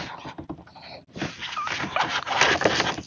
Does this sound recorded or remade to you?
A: recorded